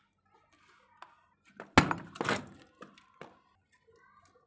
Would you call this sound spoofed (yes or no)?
no